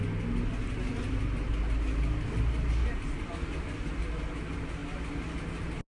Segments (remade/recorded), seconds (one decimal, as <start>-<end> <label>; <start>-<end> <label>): 0.0-5.9 recorded